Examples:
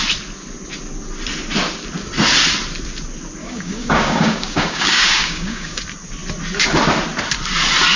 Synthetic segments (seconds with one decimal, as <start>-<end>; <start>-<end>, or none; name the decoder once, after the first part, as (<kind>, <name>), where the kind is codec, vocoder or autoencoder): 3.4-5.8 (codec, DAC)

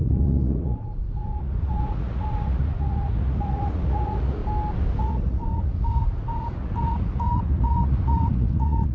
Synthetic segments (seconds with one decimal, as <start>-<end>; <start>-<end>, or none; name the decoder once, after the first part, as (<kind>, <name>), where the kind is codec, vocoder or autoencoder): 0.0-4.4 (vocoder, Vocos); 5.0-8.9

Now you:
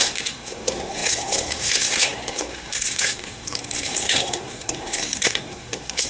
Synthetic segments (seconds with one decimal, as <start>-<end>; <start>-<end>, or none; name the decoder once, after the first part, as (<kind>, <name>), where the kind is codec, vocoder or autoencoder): 0.0-6.1 (codec, SNAC)

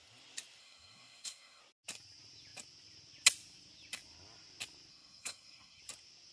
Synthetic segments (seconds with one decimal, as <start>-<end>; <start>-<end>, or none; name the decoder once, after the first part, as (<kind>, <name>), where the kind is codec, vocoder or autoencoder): 0.6-1.6 (codec, SNAC); 4.9-5.8

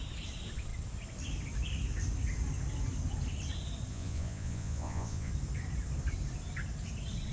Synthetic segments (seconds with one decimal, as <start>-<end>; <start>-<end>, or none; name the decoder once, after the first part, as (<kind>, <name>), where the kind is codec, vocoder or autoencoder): 3.9-5.3 (vocoder, Vocos)